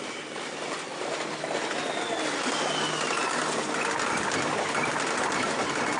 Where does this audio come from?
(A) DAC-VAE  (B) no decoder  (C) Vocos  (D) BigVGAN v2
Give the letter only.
B